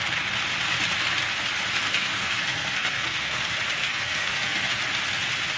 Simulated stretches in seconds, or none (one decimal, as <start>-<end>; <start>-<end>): 1.8-3.4; 3.8-4.7